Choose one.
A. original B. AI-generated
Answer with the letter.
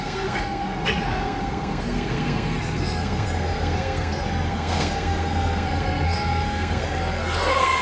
B